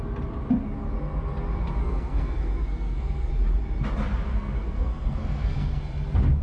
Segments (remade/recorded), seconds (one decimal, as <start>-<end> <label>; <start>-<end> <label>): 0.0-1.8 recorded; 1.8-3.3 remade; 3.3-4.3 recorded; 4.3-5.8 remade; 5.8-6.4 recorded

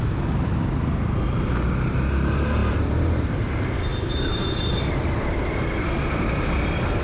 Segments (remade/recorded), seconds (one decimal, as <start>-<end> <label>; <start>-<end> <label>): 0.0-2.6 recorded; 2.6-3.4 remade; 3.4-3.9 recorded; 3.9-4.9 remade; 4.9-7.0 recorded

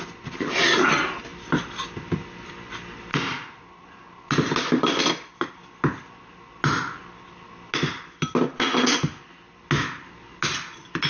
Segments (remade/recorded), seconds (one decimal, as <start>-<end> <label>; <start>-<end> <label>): 0.0-11.1 recorded